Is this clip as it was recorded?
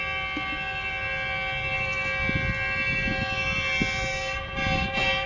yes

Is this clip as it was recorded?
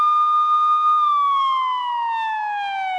yes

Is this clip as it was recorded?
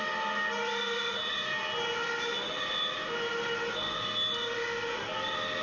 yes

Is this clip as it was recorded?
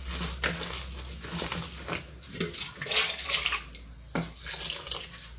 yes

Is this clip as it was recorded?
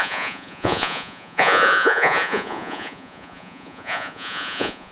no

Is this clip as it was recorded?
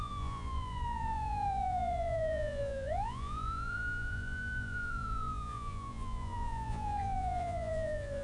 no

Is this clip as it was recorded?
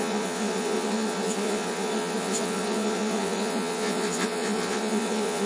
no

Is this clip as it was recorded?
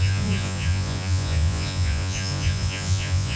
no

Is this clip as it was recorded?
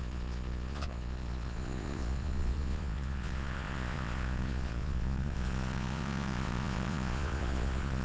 no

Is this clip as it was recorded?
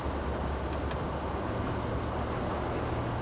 yes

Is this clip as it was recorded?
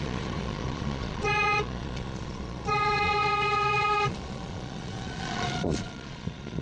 no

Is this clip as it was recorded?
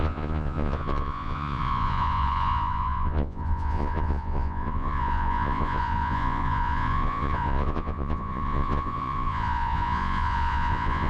no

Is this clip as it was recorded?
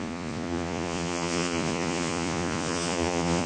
no